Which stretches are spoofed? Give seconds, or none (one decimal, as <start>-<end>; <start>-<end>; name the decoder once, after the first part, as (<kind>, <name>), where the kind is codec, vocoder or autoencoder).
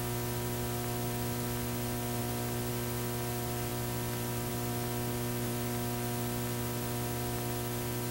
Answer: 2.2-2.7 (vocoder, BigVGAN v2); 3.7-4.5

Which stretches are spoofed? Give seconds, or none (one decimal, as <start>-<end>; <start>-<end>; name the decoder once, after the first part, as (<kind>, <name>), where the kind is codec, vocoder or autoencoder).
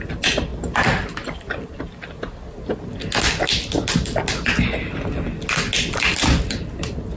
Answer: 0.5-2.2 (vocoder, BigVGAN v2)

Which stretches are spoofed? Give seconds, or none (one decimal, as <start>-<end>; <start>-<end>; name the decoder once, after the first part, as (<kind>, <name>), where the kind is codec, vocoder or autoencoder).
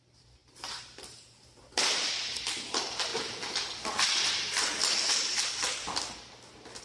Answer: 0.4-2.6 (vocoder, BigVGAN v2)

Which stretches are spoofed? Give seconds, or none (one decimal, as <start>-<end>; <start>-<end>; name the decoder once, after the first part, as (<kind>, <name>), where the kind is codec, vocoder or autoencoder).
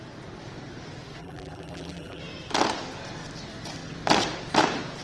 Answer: 1.2-2.2 (vocoder, BigVGAN v2)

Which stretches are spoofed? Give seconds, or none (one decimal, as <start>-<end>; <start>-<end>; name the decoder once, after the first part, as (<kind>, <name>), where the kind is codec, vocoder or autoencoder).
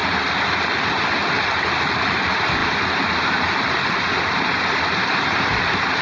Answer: 1.9-2.6 (vocoder, BigVGAN v2); 4.3-6.0